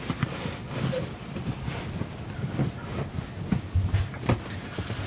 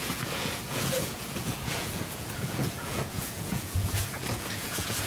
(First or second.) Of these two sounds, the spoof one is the second